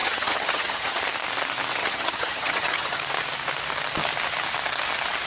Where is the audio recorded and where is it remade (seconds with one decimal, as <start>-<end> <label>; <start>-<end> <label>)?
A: 0.0-1.0 remade; 1.0-1.8 recorded; 1.8-3.0 remade; 3.0-5.3 recorded